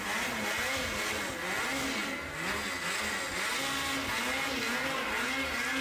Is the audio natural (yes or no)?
yes